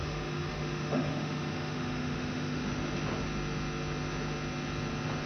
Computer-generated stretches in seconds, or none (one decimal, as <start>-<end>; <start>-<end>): 0.0-2.8